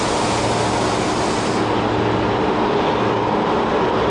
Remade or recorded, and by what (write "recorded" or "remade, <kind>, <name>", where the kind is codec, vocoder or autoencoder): recorded